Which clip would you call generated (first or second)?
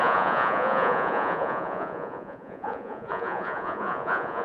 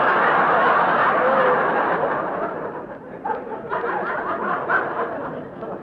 first